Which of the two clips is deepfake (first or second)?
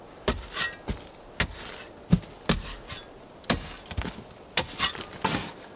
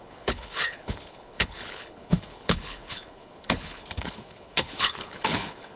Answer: second